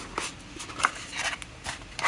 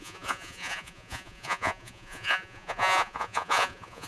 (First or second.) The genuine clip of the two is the first